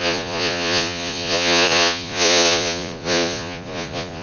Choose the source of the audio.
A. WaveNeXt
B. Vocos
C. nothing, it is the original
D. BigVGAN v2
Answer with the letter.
B